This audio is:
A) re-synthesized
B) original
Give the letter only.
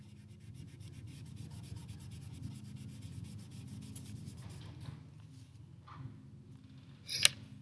B